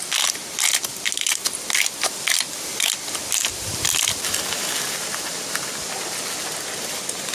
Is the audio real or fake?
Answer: real